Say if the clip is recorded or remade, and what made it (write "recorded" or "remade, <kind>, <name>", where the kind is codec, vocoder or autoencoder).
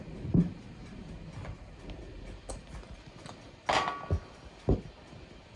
recorded